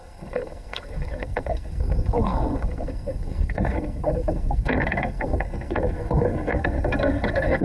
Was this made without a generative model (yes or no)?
no